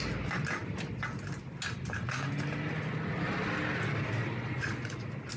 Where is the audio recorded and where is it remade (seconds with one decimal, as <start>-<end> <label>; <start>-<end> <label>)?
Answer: 0.0-4.2 recorded; 4.2-5.0 remade; 5.0-5.4 recorded